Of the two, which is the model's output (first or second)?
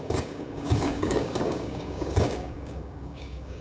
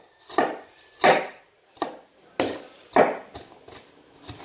first